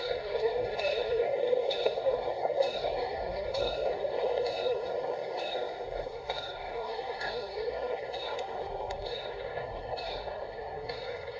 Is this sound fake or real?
fake